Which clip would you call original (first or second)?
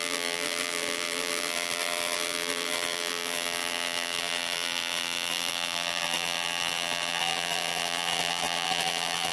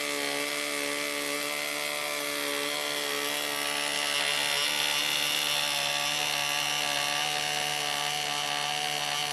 second